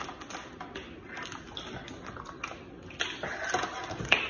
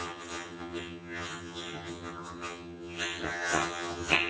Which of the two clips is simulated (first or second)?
second